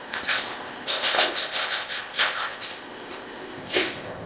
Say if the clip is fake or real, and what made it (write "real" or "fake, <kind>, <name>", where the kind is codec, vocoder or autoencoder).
fake, codec, ZipCodec